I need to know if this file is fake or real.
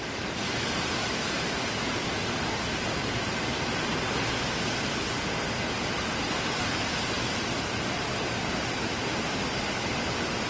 real